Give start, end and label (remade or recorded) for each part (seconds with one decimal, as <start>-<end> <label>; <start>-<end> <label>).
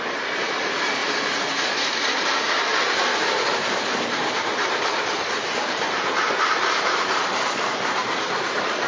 0.0-2.7 remade; 2.7-3.5 recorded; 3.5-8.9 remade